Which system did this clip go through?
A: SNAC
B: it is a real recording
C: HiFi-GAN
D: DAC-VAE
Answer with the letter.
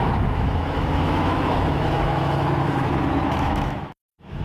D